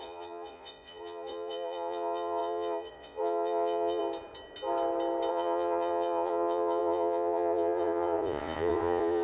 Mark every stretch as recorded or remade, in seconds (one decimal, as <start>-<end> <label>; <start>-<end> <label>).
0.0-4.0 remade; 4.0-5.3 recorded; 5.3-9.2 remade